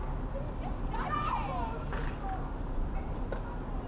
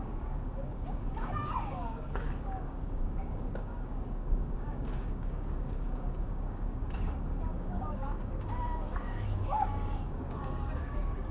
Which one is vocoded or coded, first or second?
second